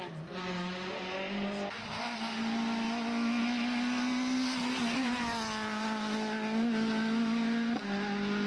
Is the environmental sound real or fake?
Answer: real